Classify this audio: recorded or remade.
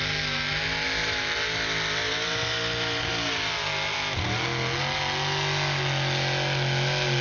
recorded